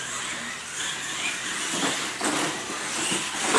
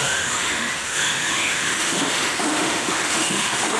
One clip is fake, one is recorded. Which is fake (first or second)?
second